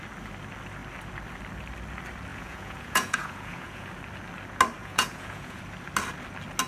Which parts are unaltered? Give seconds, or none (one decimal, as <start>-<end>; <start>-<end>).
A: 0.0-2.3; 3.9-4.8; 5.6-6.7